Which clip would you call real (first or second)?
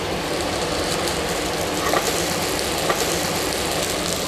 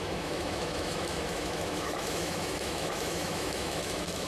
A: first